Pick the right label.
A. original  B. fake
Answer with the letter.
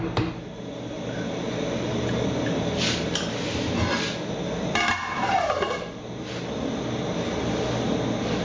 A